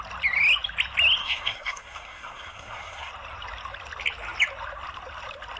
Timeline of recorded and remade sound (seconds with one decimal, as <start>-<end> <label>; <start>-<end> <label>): 0.0-1.2 recorded; 1.2-3.1 remade; 3.1-5.6 recorded